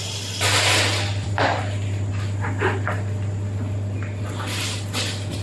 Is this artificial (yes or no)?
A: no